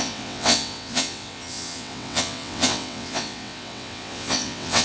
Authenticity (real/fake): fake